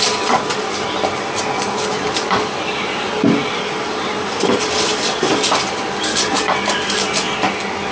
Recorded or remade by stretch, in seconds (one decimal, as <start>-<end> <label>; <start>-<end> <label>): 0.0-7.9 recorded